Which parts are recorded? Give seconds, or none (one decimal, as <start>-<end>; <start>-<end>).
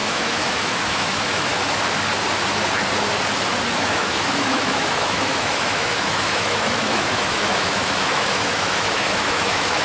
1.5-3.8